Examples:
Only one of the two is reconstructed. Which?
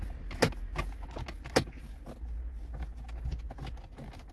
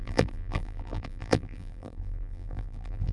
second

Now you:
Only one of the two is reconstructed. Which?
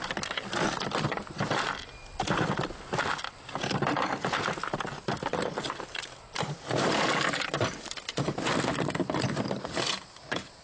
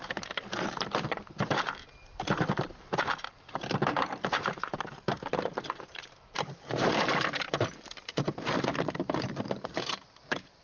second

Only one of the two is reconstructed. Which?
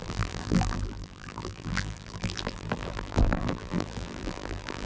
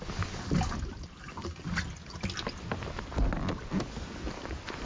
first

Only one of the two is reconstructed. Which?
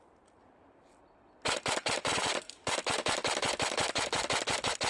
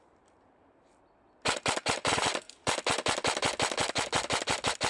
first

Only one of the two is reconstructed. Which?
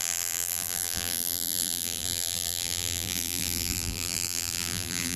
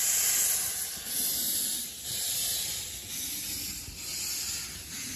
first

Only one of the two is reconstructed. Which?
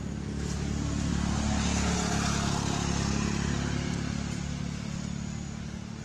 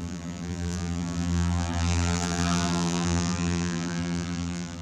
second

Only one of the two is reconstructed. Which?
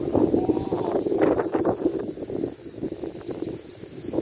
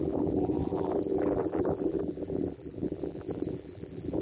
second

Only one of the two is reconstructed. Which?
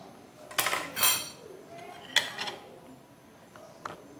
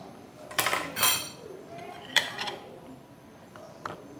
second